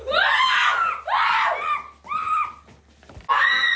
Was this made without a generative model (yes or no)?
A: yes